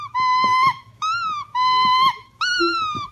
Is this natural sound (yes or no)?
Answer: no